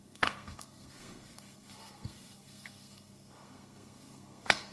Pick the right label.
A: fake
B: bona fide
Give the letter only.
A